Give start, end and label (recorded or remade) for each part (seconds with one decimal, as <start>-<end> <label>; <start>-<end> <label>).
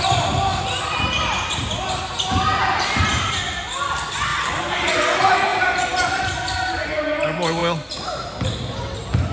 0.0-0.5 recorded; 0.5-3.4 remade; 3.4-4.3 recorded; 4.3-4.9 remade; 4.9-5.5 recorded; 5.5-6.2 remade; 6.2-9.3 recorded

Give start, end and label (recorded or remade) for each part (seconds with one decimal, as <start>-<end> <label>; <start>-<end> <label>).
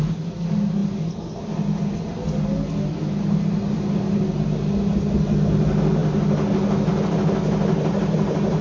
0.0-8.6 recorded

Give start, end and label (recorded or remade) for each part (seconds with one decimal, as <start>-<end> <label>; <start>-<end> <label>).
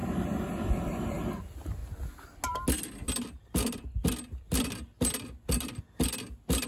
0.0-6.7 recorded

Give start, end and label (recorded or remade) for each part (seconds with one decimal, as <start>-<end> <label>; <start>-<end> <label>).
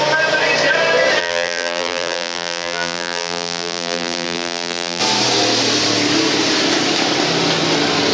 0.0-1.2 recorded; 1.2-5.0 remade; 5.0-8.1 recorded